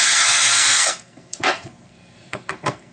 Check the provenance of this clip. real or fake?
fake